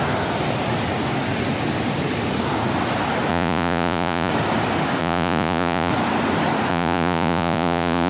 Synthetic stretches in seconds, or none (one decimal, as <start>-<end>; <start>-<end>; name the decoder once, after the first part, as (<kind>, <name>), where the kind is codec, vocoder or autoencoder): 3.3-4.3 (vocoder, Vocos); 5.0-5.9; 6.7-8.1